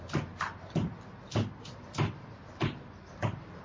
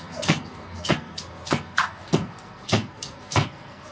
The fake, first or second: second